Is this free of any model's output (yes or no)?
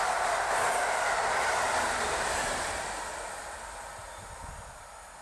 yes